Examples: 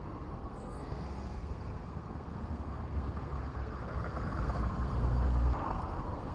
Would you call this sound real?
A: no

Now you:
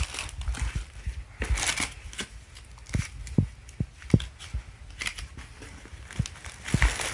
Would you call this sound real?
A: yes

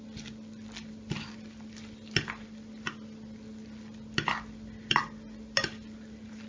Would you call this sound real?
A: yes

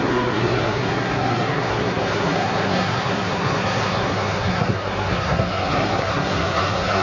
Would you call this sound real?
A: no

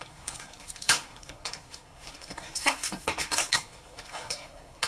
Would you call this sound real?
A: no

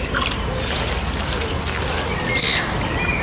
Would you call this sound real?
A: yes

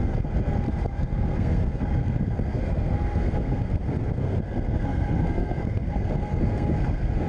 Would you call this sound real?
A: no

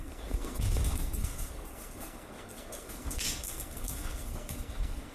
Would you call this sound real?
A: no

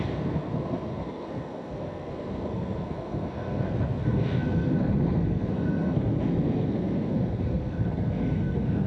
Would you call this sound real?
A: no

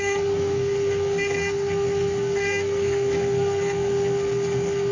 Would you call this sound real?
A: no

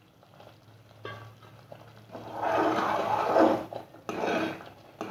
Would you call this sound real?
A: yes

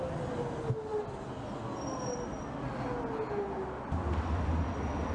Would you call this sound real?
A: yes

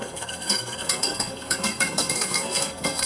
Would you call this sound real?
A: no